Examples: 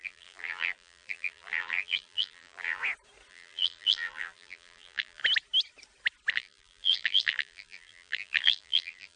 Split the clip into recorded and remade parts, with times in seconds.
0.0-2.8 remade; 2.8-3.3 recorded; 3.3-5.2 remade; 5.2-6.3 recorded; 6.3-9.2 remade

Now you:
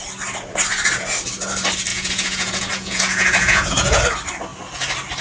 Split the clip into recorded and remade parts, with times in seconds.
0.0-1.9 recorded; 1.9-4.0 remade; 4.0-5.2 recorded

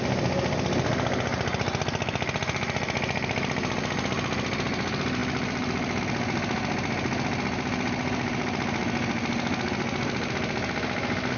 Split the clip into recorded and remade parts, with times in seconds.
0.0-11.4 recorded

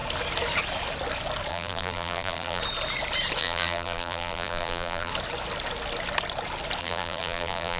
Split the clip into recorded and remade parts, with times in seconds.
0.0-1.5 recorded; 1.5-2.6 remade; 2.6-3.4 recorded; 3.4-5.1 remade; 5.1-6.8 recorded; 6.8-7.8 remade